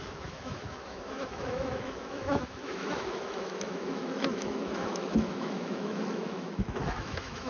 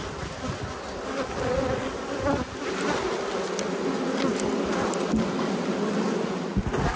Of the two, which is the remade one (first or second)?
first